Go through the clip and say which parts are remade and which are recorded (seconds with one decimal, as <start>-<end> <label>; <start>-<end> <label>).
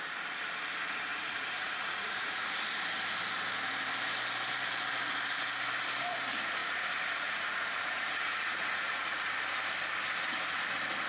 0.0-1.1 recorded; 1.1-2.5 remade; 2.5-6.6 recorded; 6.6-9.3 remade; 9.3-11.1 recorded